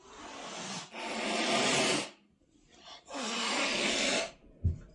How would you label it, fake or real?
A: real